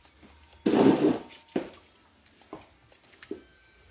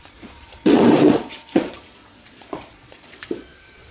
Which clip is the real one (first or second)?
first